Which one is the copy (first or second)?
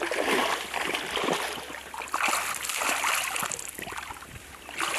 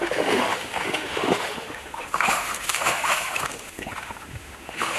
second